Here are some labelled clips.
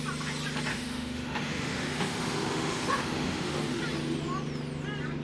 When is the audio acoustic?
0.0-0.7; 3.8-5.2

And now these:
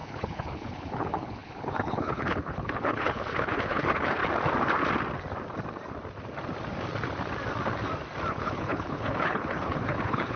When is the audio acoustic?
4.2-8.3